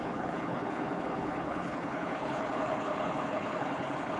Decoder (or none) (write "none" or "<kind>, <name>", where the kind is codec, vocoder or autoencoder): codec, HILCodec